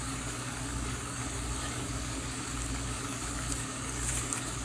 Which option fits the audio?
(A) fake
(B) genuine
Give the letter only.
A